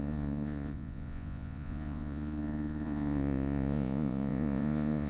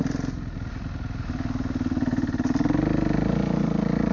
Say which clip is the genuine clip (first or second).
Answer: second